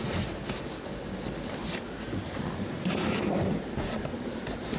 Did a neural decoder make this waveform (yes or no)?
no